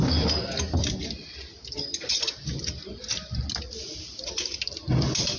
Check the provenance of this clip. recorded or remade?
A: recorded